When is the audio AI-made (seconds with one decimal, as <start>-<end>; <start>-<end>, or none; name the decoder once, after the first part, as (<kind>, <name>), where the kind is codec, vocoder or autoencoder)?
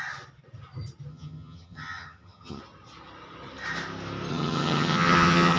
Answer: 1.1-2.6 (vocoder, HiFi-GAN); 4.3-5.6